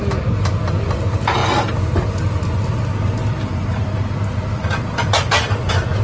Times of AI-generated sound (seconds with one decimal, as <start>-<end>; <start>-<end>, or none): none